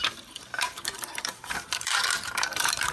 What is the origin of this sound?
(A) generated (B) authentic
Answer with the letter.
A